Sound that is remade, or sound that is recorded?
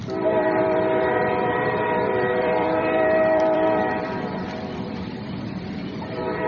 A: remade